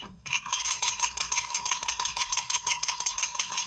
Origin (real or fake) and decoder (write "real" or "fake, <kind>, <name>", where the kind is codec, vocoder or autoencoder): fake, codec, SNAC